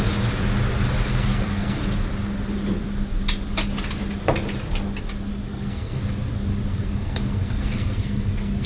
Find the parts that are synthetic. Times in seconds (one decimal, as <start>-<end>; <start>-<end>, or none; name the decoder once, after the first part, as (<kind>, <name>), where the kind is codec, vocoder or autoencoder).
1.1-1.8 (codec, SNAC); 5.3-6.0; 6.7-8.7